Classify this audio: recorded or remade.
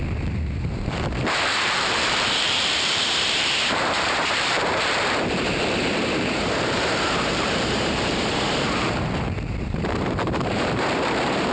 remade